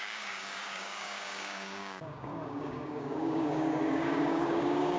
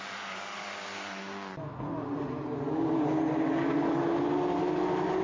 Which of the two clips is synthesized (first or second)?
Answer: first